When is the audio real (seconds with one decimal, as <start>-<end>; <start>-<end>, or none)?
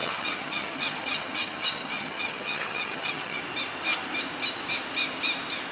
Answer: 3.4-5.7